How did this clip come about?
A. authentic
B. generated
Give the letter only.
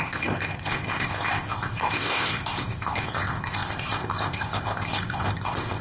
B